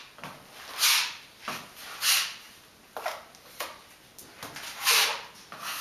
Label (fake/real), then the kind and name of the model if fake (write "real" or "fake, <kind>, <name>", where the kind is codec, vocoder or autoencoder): real